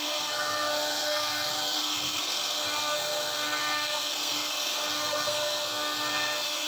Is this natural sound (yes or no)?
no